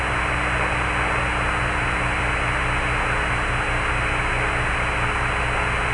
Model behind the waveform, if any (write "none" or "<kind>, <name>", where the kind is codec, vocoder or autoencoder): none